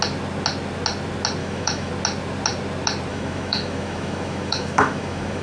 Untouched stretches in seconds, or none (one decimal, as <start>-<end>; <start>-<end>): 0.0-1.4; 1.9-3.1